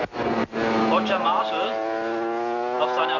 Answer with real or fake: real